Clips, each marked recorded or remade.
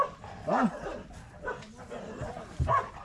recorded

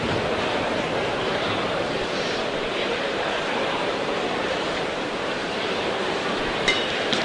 remade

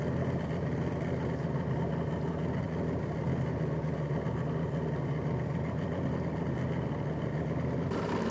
recorded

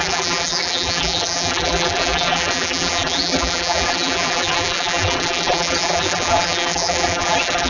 remade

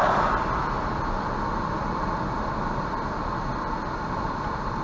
recorded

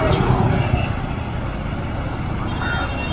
recorded